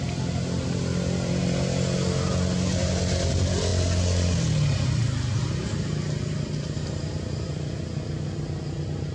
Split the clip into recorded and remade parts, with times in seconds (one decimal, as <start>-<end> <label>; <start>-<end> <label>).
0.0-9.1 recorded